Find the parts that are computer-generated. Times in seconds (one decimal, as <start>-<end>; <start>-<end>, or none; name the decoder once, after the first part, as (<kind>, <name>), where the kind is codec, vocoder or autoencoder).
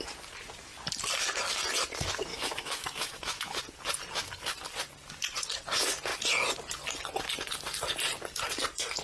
2.3-3.6 (autoencoder, DAC-VAE)